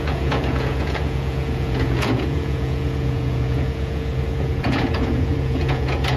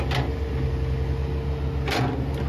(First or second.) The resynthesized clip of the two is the first